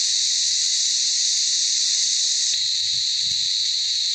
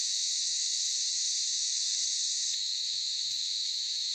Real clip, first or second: first